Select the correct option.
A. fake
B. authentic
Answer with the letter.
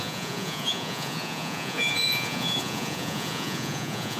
A